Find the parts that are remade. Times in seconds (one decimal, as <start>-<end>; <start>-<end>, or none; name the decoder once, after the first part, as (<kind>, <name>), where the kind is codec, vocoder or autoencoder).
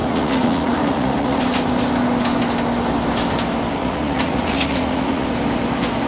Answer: 0.0-1.4 (vocoder, Vocos); 3.8-5.3